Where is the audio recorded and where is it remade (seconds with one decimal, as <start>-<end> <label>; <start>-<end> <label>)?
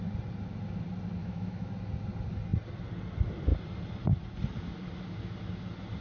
0.0-1.2 recorded; 1.2-1.7 remade; 1.7-6.0 recorded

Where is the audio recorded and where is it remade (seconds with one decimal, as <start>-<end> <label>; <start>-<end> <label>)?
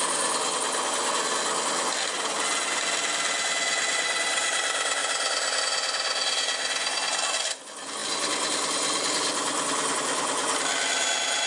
0.0-11.5 recorded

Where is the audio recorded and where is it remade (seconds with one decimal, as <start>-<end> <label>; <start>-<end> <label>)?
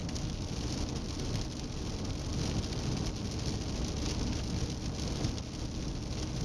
0.0-6.4 recorded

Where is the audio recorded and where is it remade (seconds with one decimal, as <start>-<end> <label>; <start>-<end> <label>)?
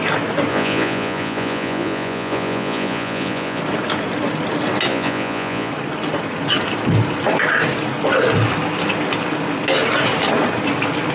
0.0-0.5 recorded; 0.5-3.6 remade; 3.6-4.9 recorded; 4.9-5.7 remade; 5.7-11.1 recorded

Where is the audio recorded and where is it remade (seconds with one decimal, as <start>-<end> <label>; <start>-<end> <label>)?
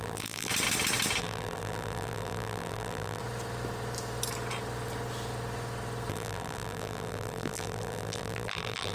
0.0-0.5 remade; 0.5-1.2 recorded; 1.2-3.2 remade; 3.2-6.1 recorded; 6.1-8.9 remade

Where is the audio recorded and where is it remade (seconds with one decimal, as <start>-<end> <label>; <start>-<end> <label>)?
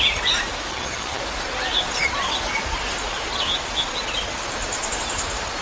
0.0-0.7 recorded; 0.7-1.2 remade; 1.2-5.6 recorded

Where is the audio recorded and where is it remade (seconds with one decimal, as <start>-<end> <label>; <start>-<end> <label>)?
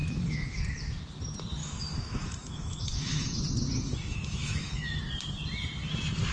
0.0-0.6 remade; 0.6-1.6 recorded; 1.6-3.4 remade; 3.4-4.1 recorded; 4.1-5.0 remade; 5.0-6.3 recorded